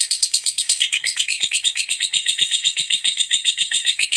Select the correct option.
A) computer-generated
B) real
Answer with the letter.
A